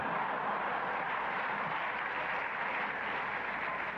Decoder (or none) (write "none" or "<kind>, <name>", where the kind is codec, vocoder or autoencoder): none